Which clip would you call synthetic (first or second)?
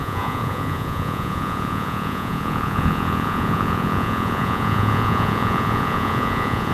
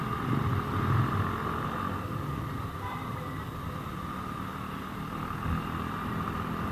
first